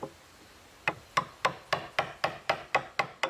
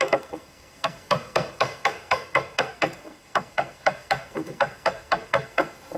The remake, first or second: second